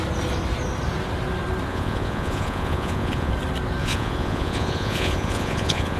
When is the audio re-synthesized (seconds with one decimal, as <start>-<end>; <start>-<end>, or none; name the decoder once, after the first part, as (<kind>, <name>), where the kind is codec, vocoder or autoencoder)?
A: 1.7-3.3 (vocoder, Vocos); 3.8-6.0